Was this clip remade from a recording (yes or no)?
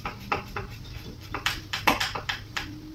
yes